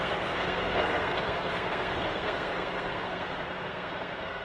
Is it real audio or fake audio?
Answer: fake